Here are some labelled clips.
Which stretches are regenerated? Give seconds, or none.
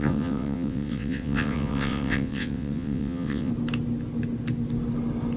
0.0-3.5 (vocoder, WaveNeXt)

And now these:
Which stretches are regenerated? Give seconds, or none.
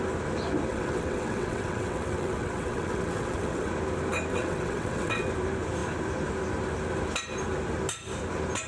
0.7-3.7 (vocoder, WaveNeXt); 4.3-5.3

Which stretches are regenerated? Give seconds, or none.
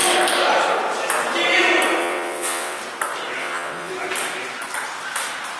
2.0-2.8 (vocoder, WaveNeXt); 3.4-3.9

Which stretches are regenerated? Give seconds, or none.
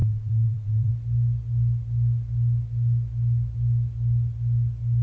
0.0-0.9 (vocoder, WaveNeXt)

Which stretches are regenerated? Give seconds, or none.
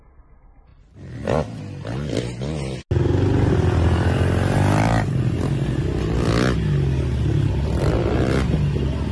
none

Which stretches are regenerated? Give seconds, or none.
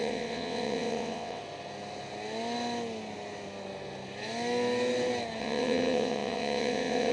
0.0-1.4 (vocoder, WaveNeXt); 5.4-7.1